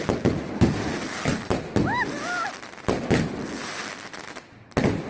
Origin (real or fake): real